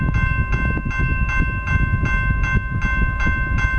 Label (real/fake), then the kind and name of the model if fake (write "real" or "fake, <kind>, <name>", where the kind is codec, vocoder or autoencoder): real